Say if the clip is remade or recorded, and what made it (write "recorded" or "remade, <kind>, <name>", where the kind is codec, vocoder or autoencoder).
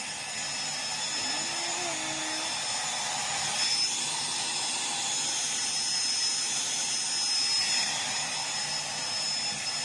recorded